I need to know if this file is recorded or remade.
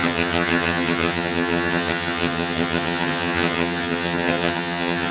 remade